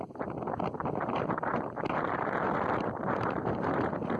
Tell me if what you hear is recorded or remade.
remade